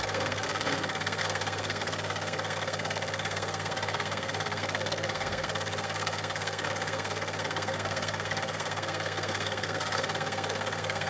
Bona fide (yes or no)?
no